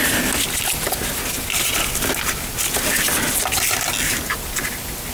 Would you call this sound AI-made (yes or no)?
no